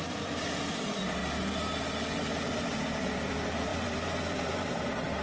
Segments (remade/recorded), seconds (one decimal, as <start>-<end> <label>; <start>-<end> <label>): 0.0-1.2 remade; 1.2-2.1 recorded; 2.1-5.2 remade